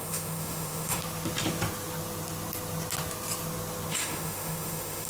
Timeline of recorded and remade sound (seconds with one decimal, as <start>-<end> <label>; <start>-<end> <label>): 0.0-1.0 remade; 1.0-3.9 recorded; 3.9-5.1 remade